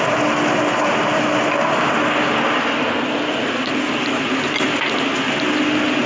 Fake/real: real